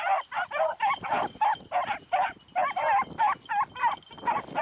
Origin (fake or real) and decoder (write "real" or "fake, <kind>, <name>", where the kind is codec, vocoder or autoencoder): real